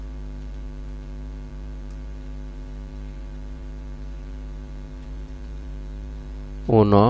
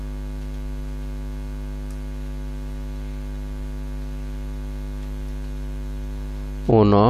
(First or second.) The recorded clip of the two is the second